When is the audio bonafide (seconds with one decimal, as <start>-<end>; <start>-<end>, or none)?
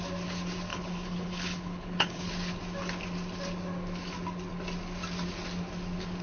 0.0-0.7; 2.3-6.2